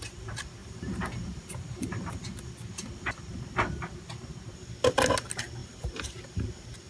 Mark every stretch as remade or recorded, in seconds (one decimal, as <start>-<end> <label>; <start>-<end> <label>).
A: 0.0-0.6 recorded; 0.6-2.1 remade; 2.1-5.6 recorded; 5.6-6.9 remade